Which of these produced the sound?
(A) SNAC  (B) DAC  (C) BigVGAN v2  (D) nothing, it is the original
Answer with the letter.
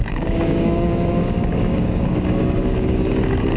B